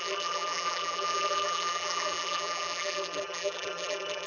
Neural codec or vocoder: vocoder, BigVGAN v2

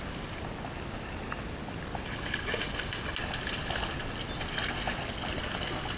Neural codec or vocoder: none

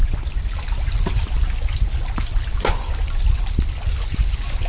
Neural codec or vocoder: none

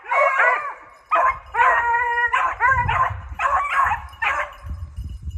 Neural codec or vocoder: vocoder, BigVGAN v2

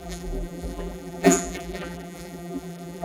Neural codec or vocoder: vocoder, BigVGAN v2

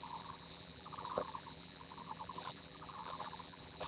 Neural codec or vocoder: vocoder, BigVGAN v2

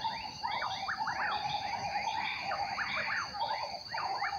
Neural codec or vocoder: vocoder, BigVGAN v2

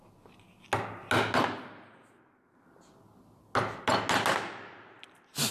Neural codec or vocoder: none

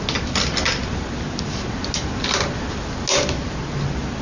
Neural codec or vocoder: none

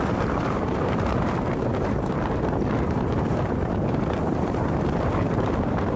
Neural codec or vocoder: vocoder, BigVGAN v2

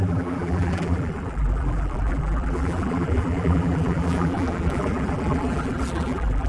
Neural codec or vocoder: vocoder, BigVGAN v2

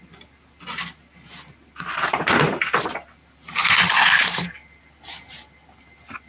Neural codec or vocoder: none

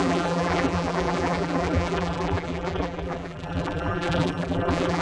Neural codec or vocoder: vocoder, BigVGAN v2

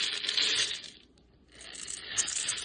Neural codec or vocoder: vocoder, BigVGAN v2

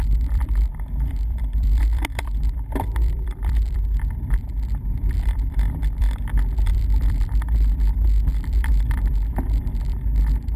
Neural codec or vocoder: vocoder, BigVGAN v2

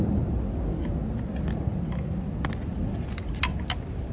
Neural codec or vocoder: none